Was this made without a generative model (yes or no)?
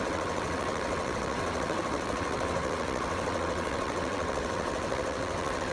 no